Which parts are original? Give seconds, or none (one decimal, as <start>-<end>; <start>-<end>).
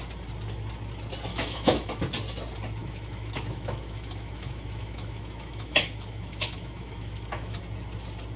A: 0.0-1.3; 2.0-2.8; 7.6-8.4